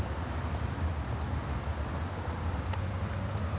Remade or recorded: recorded